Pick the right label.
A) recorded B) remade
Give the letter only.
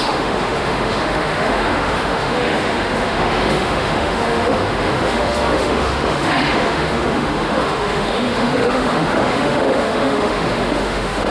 B